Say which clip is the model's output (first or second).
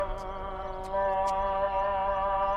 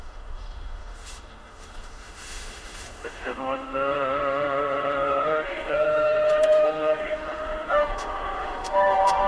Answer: second